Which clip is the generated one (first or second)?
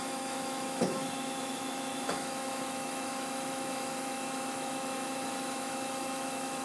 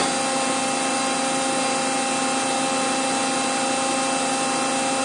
first